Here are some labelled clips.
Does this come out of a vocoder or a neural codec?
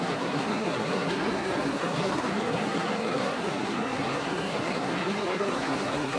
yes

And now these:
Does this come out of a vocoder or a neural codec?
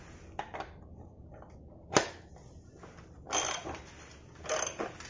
no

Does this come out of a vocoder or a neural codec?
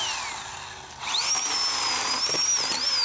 no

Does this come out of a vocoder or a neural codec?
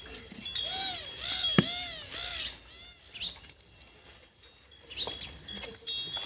no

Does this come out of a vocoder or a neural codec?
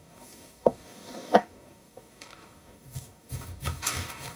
yes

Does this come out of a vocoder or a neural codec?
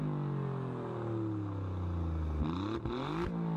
no